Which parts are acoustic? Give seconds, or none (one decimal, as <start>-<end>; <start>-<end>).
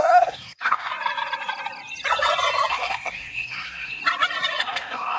0.9-2.7; 4.0-4.6